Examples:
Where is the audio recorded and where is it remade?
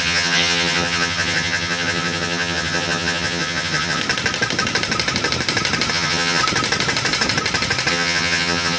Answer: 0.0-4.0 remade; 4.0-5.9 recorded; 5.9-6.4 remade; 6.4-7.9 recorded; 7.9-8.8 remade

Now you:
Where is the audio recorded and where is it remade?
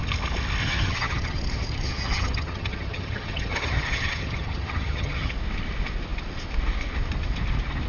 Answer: 0.0-0.6 recorded; 0.6-5.3 remade; 5.3-7.9 recorded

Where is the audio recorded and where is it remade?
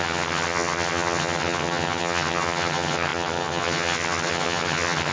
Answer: 0.0-5.1 remade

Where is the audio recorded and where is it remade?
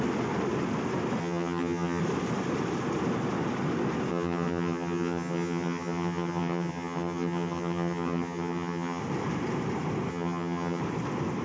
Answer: 0.0-1.2 recorded; 1.2-2.0 remade; 2.0-4.1 recorded; 4.1-9.0 remade; 9.0-10.1 recorded; 10.1-10.8 remade; 10.8-11.4 recorded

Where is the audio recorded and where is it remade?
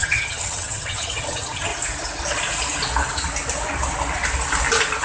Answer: 0.0-1.7 remade; 1.7-5.0 recorded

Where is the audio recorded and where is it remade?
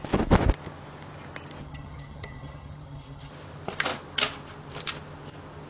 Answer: 0.0-1.6 recorded; 1.6-3.3 remade; 3.3-5.7 recorded